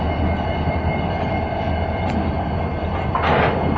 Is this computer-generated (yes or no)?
no